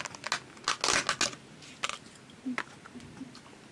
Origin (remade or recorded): recorded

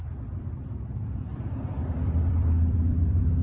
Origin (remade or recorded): remade